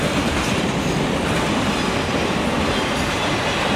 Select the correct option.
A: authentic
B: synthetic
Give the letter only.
A